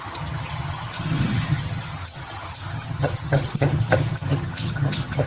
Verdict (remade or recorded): remade